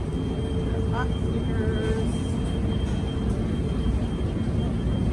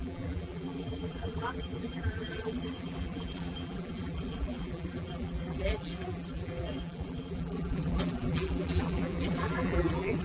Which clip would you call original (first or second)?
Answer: first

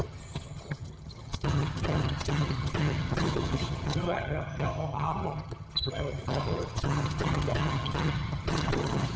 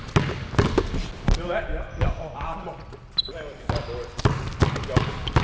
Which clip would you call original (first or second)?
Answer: second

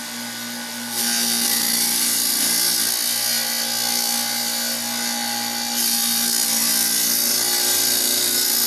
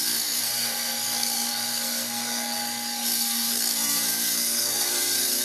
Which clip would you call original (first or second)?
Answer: first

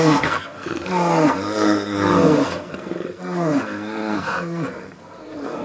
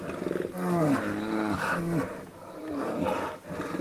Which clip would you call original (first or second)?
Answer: second